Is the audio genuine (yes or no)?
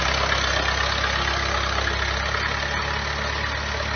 yes